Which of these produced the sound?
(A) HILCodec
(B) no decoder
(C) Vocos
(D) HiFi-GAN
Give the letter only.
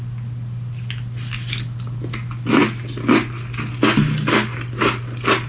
B